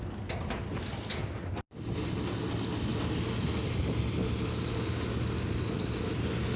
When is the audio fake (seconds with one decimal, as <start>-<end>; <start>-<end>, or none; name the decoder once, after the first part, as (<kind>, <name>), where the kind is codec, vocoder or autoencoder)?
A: none